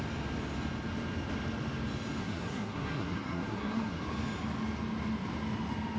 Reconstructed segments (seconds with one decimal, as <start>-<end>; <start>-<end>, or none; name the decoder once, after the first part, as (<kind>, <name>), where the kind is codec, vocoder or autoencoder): 2.2-4.0 (codec, SNAC)